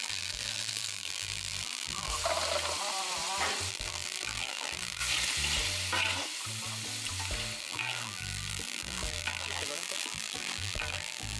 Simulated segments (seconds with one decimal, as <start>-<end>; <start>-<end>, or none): 0.0-2.1; 3.7-5.0; 7.6-11.4